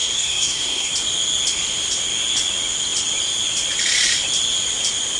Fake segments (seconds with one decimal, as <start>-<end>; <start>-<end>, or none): 0.0-0.9